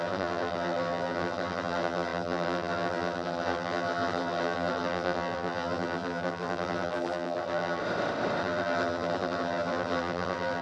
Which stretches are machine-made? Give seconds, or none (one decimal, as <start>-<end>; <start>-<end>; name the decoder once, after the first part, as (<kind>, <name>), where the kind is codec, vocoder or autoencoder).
0.0-7.8 (vocoder, BigVGAN v2); 8.4-10.6